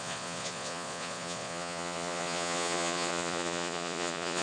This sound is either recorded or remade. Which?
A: remade